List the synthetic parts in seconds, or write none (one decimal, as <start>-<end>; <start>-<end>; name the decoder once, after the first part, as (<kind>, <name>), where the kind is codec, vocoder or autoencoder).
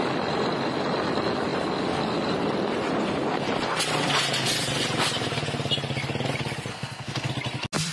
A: 6.7-7.3 (codec, SNAC)